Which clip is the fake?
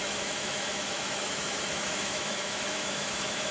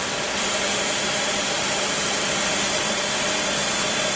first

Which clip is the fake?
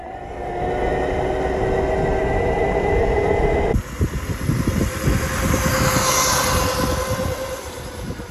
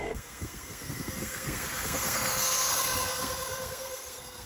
second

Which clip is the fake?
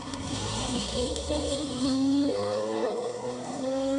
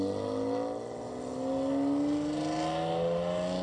first